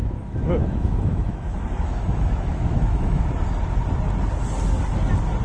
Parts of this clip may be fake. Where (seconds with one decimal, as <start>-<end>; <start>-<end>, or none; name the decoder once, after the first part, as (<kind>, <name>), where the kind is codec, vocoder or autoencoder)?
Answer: 0.0-3.2 (autoencoder, DAC-VAE)